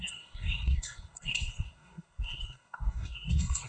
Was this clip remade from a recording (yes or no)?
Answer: yes